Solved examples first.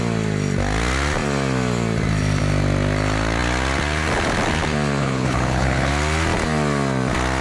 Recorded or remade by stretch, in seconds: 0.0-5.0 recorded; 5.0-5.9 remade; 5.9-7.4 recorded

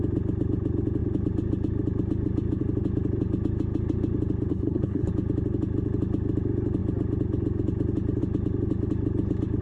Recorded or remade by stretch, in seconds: 0.0-4.5 recorded; 4.5-5.1 remade; 5.1-9.6 recorded

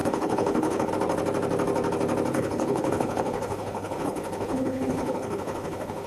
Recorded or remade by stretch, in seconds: 0.0-0.9 remade; 0.9-2.3 recorded; 2.3-6.1 remade

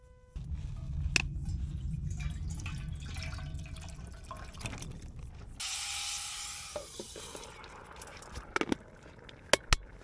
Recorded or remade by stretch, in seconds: 0.0-10.0 recorded

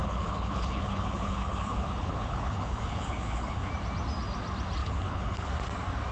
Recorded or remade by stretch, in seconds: 0.0-3.7 remade; 3.7-4.8 recorded; 4.8-5.5 remade; 5.5-6.1 recorded

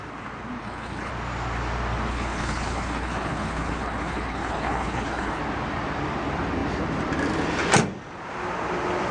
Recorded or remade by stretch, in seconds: 0.0-0.6 recorded; 0.6-1.1 remade; 1.1-2.1 recorded; 2.1-5.4 remade; 5.4-9.1 recorded

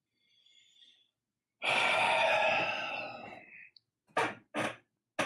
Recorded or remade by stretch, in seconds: 0.0-5.3 recorded